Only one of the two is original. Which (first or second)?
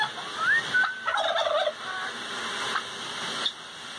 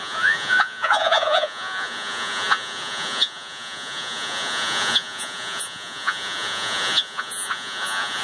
first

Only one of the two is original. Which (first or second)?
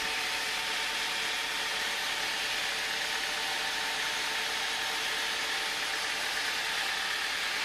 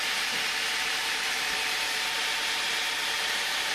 first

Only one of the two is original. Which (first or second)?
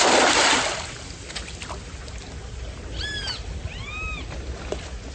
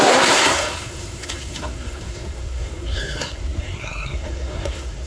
first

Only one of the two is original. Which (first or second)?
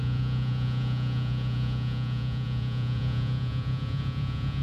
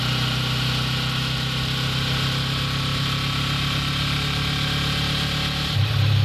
second